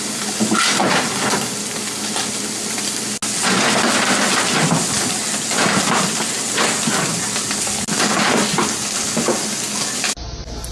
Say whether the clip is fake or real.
real